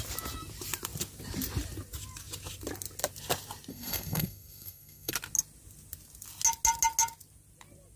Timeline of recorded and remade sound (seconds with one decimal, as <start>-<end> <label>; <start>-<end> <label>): 0.0-3.7 recorded; 3.7-5.1 remade; 5.1-8.0 recorded